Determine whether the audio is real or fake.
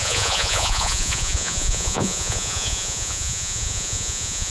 fake